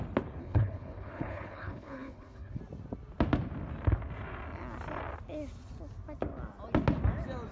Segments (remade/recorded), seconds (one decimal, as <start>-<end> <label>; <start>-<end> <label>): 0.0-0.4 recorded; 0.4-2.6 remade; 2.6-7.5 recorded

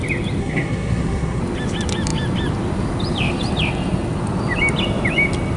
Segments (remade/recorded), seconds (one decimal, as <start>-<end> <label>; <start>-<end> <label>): 0.0-0.4 recorded; 0.4-1.4 remade; 1.4-5.6 recorded

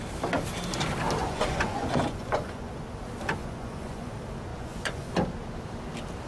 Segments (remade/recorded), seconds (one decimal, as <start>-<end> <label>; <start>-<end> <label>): 0.0-1.2 recorded; 1.2-2.7 remade; 2.7-3.4 recorded; 3.4-4.1 remade; 4.1-4.5 recorded; 4.5-5.1 remade; 5.1-6.3 recorded

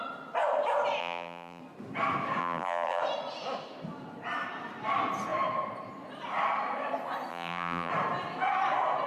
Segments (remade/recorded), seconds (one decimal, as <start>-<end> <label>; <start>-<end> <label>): 0.0-1.0 recorded; 1.0-1.6 remade; 1.6-2.4 recorded; 2.4-3.0 remade; 3.0-7.3 recorded; 7.3-7.9 remade; 7.9-9.1 recorded

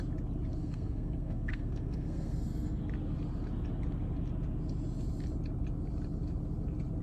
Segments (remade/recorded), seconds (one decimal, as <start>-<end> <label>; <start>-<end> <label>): 0.0-0.6 recorded; 0.6-2.8 remade; 2.8-7.0 recorded